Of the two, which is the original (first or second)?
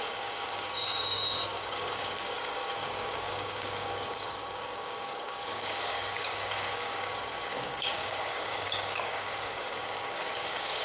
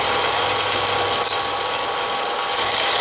second